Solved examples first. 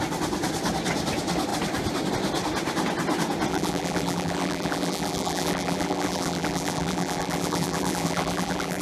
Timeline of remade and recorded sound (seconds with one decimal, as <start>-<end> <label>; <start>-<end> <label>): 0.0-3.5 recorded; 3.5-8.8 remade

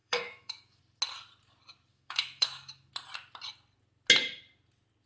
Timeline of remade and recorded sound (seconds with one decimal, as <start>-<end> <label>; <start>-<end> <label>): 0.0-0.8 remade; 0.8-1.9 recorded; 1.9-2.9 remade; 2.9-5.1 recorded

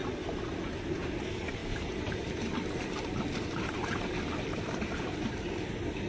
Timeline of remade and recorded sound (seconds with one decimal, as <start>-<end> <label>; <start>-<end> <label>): 0.0-1.6 recorded; 1.6-5.3 remade; 5.3-6.1 recorded

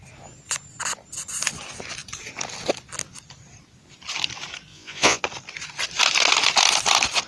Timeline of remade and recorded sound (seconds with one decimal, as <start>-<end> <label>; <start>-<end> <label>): 0.0-4.7 recorded; 4.7-5.2 remade; 5.2-7.3 recorded

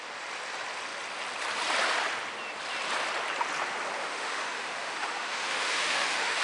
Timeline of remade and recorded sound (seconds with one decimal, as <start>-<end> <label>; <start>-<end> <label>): 0.0-4.0 recorded; 4.0-6.4 remade